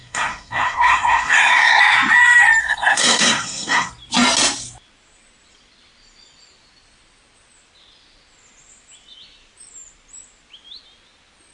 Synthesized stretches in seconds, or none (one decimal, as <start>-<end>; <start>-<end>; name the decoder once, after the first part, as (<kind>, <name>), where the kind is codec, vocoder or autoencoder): 0.0-1.8 (codec, SNAC); 2.6-3.9